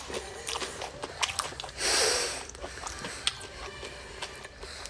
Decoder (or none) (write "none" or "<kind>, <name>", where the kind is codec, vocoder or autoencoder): none